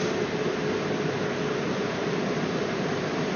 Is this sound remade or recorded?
recorded